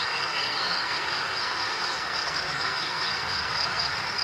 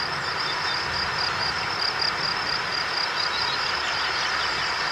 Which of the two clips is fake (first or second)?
first